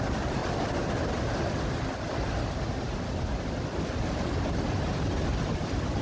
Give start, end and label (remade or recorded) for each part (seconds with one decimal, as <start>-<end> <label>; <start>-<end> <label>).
0.0-6.0 recorded